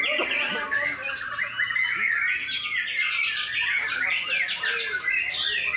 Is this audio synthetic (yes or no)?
no